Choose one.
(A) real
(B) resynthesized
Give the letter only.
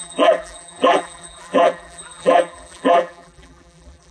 B